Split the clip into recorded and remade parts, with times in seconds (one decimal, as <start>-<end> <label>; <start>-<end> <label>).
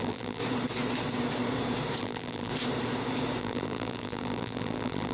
0.0-0.4 remade; 0.4-2.0 recorded; 2.0-2.5 remade; 2.5-3.4 recorded; 3.4-5.1 remade